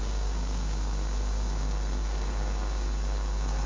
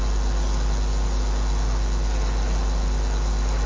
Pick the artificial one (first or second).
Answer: first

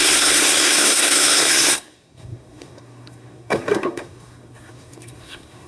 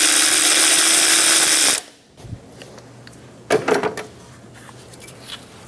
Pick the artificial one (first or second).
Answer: first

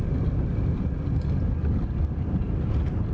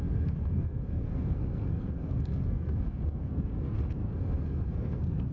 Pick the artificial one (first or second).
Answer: second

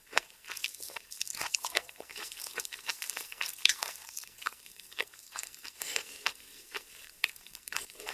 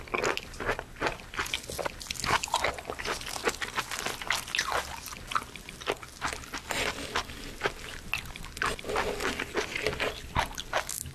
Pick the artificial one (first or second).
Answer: first